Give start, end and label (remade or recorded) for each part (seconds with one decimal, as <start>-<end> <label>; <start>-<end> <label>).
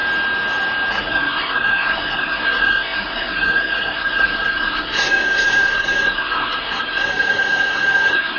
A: 0.0-0.9 recorded; 0.9-8.4 remade